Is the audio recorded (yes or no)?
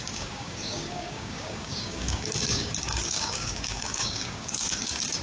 no